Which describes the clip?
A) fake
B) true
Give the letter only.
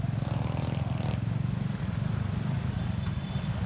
B